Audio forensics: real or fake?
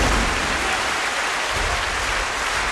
real